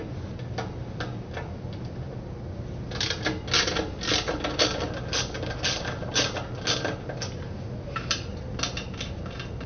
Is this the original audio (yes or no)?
yes